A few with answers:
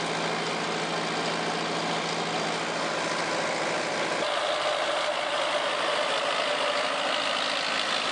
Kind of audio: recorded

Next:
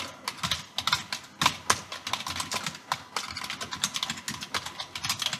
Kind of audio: recorded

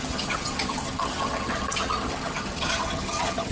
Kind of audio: remade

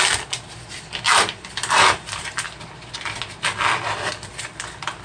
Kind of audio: recorded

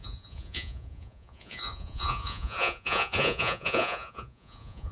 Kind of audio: remade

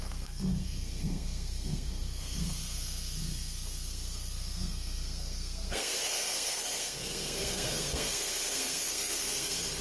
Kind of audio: remade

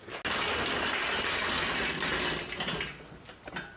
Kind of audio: recorded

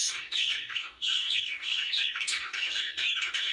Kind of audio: remade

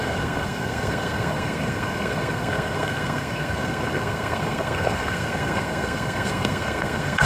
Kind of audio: remade